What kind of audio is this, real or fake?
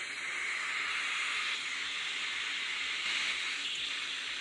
real